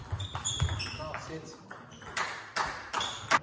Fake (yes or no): no